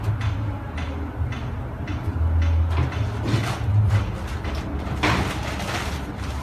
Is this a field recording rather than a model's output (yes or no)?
yes